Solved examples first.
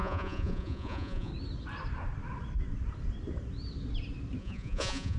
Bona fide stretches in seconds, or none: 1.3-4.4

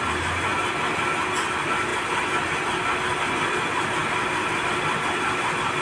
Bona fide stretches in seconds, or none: 0.0-5.8

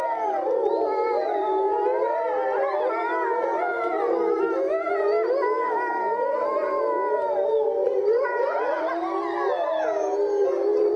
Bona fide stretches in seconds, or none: 0.0-7.8; 8.9-11.0

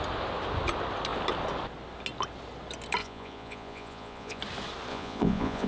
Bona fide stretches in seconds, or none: 0.0-3.0; 4.4-4.9

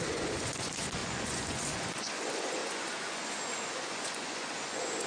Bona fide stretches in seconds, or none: none

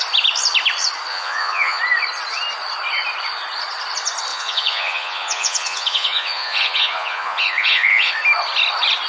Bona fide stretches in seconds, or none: 0.0-1.1; 1.8-4.3; 8.1-9.1